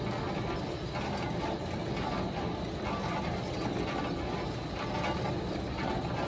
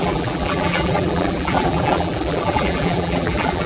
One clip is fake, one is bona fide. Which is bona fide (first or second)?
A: first